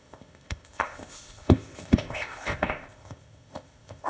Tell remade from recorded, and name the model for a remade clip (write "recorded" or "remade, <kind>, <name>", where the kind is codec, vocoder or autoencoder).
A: remade, codec, ZipCodec